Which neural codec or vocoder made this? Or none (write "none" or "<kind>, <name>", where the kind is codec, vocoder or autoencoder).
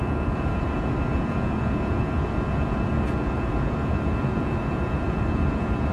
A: vocoder, Vocos